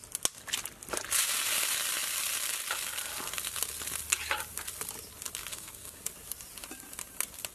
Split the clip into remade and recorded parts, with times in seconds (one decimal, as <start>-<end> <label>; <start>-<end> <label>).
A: 0.0-5.5 recorded; 5.5-6.0 remade; 6.0-7.5 recorded